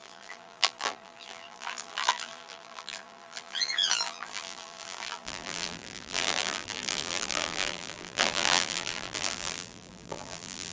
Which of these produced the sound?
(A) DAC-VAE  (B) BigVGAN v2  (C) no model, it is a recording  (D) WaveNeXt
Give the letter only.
B